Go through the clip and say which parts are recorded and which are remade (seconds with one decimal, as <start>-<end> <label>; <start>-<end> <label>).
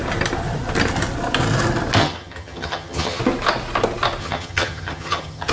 0.0-2.0 recorded; 2.0-3.2 remade; 3.2-4.2 recorded; 4.2-5.5 remade